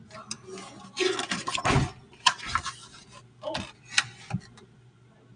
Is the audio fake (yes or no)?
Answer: no